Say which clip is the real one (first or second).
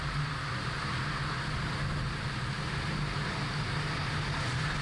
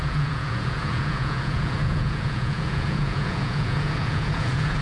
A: first